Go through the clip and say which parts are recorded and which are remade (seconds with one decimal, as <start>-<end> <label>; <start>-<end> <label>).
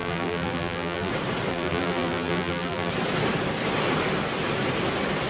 0.0-1.1 remade; 1.1-1.5 recorded; 1.5-2.9 remade; 2.9-5.3 recorded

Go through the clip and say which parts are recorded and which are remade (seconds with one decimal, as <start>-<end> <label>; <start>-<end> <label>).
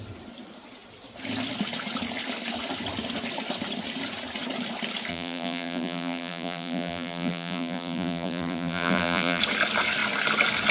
0.0-5.1 recorded; 5.1-9.4 remade; 9.4-10.7 recorded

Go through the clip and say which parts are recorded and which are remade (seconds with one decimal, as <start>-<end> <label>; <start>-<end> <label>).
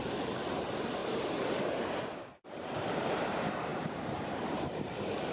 0.0-1.0 remade; 1.0-1.6 recorded; 1.6-5.3 remade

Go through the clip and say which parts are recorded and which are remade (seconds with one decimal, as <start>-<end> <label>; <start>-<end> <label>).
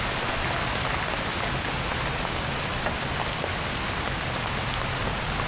0.0-1.9 recorded; 1.9-3.5 remade; 3.5-5.5 recorded